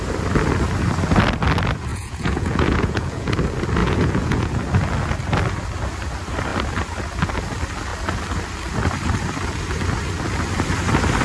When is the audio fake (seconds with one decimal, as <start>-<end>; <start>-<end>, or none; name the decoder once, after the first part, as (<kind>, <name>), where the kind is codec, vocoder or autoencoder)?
1.9-3.3 (vocoder, Vocos); 3.8-4.5